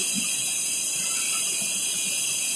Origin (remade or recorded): recorded